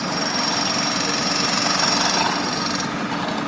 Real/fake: real